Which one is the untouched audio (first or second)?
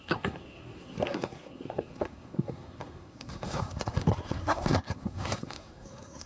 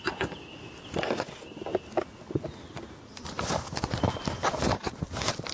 second